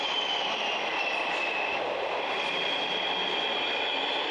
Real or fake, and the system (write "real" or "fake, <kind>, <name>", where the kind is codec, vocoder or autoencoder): real